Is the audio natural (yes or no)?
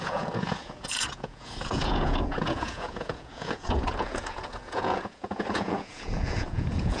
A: no